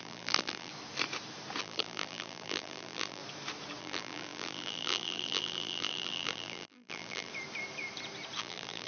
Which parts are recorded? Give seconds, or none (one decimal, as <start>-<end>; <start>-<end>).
0.7-1.6; 3.2-3.8; 7.3-8.4